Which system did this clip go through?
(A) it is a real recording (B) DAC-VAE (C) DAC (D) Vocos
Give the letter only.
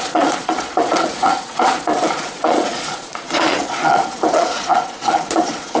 D